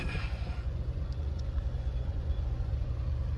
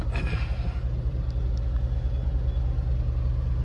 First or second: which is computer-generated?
first